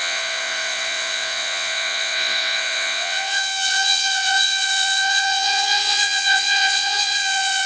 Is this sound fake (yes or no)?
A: yes